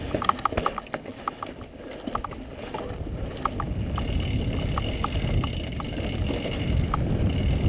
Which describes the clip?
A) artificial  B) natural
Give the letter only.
B